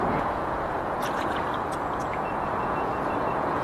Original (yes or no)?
no